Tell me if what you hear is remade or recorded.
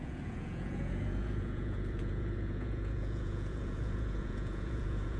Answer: remade